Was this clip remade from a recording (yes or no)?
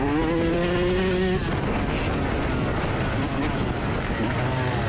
no